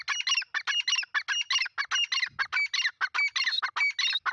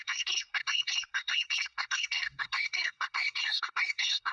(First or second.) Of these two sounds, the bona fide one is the first